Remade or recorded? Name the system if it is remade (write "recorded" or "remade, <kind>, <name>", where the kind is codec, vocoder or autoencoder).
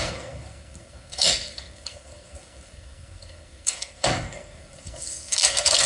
remade, codec, SNAC